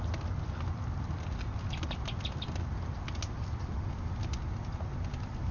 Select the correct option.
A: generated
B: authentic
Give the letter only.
B